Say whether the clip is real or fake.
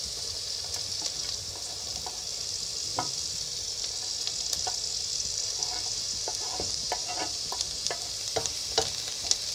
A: fake